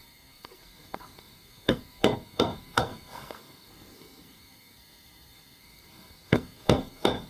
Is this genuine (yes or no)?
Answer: no